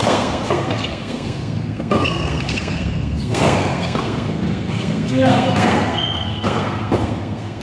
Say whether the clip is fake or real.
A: fake